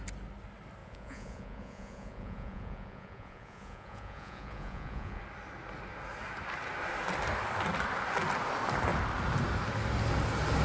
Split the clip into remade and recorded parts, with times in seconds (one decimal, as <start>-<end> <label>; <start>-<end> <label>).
0.0-0.8 recorded; 0.8-5.2 remade; 5.2-10.6 recorded